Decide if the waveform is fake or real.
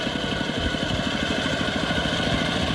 real